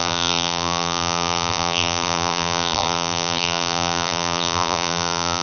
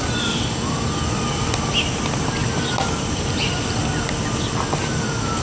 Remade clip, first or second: first